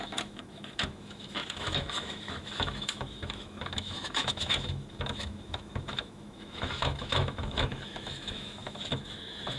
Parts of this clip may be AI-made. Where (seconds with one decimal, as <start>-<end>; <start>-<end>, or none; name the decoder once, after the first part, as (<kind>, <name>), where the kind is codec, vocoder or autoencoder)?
0.0-9.6 (autoencoder, DAC-VAE)